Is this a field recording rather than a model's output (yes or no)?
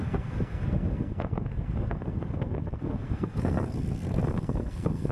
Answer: no